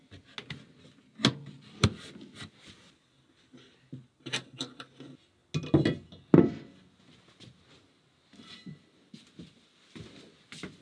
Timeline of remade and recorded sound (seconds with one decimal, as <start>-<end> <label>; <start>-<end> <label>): 0.0-10.8 recorded